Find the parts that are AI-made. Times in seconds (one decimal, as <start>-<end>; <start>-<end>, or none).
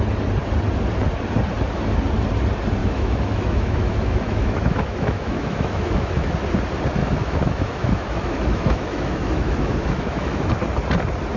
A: 2.8-6.3; 7.0-10.5